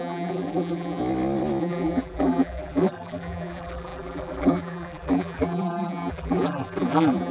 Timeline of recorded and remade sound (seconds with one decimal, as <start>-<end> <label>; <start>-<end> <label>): 0.0-1.0 remade; 1.0-1.6 recorded; 1.6-7.3 remade